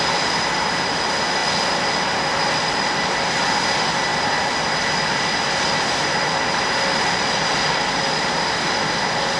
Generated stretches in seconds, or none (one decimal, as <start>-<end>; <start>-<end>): none